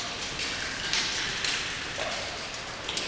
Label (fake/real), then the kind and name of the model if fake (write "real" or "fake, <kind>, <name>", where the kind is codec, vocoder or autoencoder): real